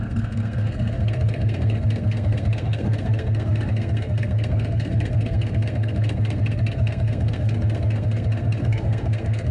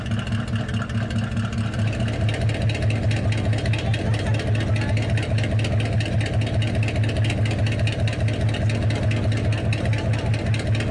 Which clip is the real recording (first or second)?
second